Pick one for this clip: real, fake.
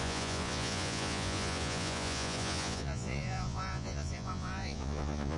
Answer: fake